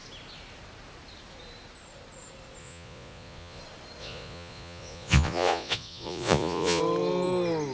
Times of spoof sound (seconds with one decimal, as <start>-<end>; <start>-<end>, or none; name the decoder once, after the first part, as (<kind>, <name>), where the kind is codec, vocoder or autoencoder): 2.6-3.6 (vocoder, Vocos); 4.0-6.8